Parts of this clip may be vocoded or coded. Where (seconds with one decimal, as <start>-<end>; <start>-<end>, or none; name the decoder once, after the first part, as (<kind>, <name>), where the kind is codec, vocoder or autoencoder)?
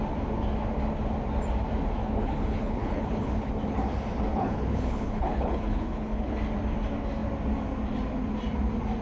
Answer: 2.0-3.5 (codec, HILCodec); 4.3-6.4